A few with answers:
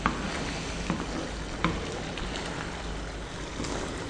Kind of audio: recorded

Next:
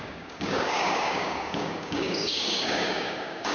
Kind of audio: remade